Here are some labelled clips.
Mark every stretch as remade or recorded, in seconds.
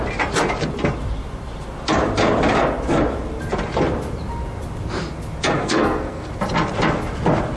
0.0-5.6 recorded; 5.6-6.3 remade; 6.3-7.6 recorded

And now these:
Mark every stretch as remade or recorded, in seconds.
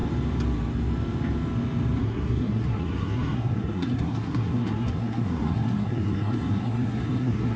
0.0-2.0 recorded; 2.0-7.6 remade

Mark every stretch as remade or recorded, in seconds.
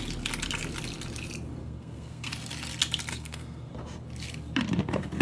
0.0-1.6 recorded; 1.6-2.3 remade; 2.3-3.1 recorded; 3.1-3.7 remade; 3.7-5.2 recorded